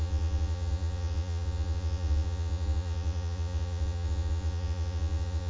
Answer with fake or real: fake